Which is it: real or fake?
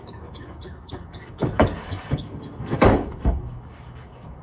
fake